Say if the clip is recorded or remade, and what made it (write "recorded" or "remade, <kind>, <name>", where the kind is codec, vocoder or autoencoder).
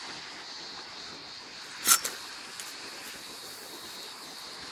recorded